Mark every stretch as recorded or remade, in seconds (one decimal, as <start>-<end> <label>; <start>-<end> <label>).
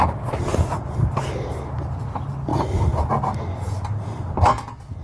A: 0.0-2.5 remade; 2.5-5.0 recorded